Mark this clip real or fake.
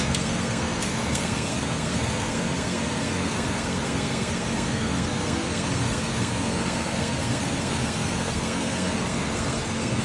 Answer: fake